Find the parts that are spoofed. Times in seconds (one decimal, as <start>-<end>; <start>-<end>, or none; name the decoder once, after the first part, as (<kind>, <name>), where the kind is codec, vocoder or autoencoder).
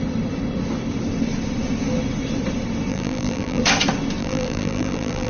2.9-3.6 (vocoder, BigVGAN v2); 4.2-5.3